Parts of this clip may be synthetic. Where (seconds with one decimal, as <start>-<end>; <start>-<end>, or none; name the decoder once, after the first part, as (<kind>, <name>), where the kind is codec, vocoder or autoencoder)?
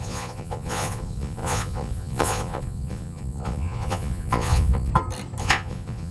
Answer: 0.0-4.9 (vocoder, Vocos); 5.4-6.1